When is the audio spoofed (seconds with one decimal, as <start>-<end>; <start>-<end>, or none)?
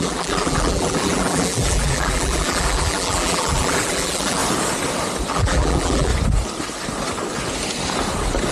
0.0-4.4; 5.3-6.1